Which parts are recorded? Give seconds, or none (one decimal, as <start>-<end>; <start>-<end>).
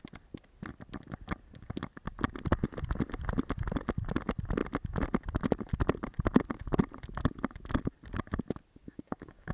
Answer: 0.0-8.8